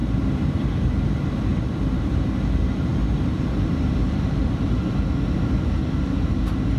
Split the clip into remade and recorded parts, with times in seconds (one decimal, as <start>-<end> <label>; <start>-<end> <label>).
0.0-0.6 remade; 0.6-1.5 recorded; 1.5-2.1 remade; 2.1-2.9 recorded; 2.9-4.9 remade; 4.9-6.8 recorded